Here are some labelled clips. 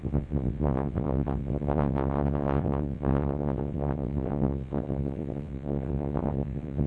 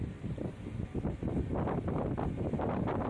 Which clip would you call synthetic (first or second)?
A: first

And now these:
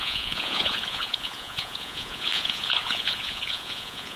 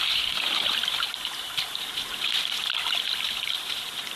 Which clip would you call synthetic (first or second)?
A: first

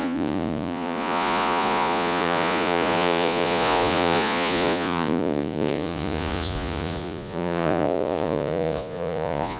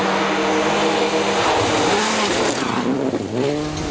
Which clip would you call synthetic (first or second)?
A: first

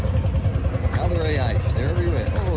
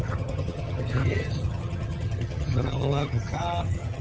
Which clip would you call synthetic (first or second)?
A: second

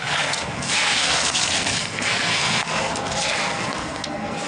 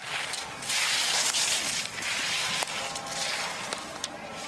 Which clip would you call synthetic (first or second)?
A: first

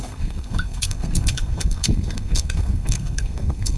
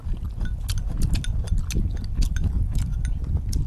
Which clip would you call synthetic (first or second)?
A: first